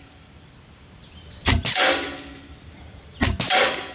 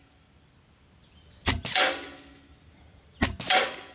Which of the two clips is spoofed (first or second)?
first